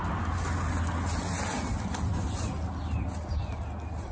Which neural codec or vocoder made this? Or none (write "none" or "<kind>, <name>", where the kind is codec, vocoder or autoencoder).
none